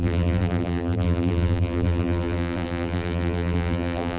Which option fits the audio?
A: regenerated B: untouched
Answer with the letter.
A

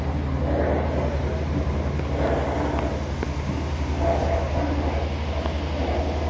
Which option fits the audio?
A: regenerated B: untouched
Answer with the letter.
B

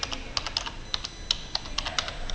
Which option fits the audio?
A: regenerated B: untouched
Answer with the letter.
B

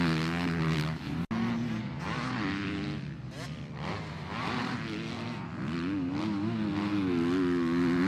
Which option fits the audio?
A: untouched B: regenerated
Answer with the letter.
A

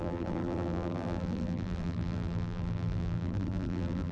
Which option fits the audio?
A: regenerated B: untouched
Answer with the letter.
A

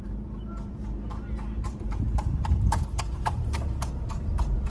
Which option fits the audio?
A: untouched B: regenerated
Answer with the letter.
B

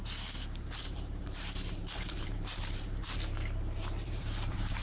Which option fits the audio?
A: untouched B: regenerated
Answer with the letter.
B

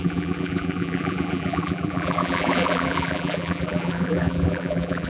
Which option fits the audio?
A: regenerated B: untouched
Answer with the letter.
A